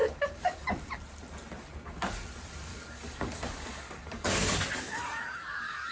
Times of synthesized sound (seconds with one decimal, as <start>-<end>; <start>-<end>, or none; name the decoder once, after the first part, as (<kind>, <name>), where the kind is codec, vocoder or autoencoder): 0.0-0.7 (codec, DAC); 2.7-5.9